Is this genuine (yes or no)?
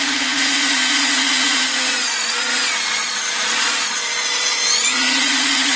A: no